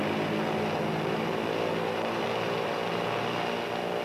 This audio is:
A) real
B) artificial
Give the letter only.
A